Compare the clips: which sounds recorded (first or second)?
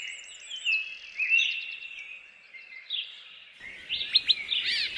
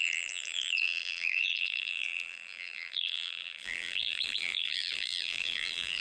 first